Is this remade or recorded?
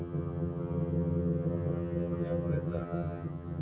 remade